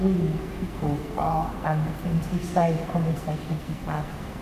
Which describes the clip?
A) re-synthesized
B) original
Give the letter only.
A